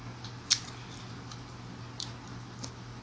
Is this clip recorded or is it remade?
recorded